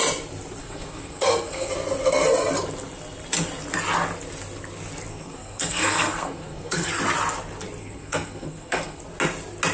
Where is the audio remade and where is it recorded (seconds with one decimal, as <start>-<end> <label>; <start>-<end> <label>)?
0.0-0.6 recorded; 0.6-1.7 remade; 1.7-5.1 recorded; 5.1-6.9 remade; 6.9-7.8 recorded; 7.8-9.0 remade; 9.0-9.7 recorded